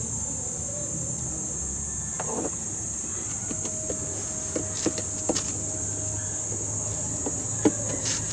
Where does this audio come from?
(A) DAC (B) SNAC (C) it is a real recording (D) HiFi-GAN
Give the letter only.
C